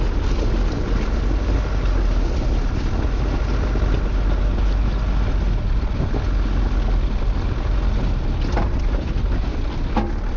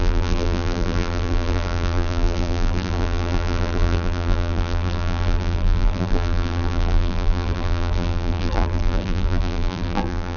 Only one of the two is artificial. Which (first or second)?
second